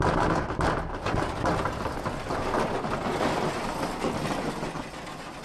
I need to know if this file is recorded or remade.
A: recorded